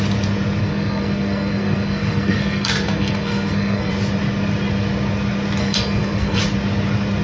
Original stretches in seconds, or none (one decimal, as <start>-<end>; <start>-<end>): 0.0-0.6; 3.9-5.6; 6.4-7.2